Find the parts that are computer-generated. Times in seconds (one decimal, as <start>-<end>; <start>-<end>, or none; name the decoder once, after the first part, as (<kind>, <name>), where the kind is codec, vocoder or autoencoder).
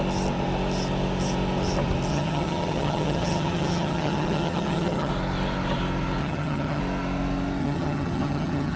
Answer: 2.1-5.1 (vocoder, HiFi-GAN); 6.2-6.8; 7.6-8.8